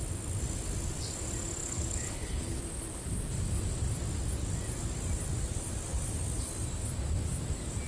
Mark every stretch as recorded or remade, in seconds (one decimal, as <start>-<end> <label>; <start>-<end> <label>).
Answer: 0.0-1.6 recorded; 1.6-2.6 remade; 2.6-7.9 recorded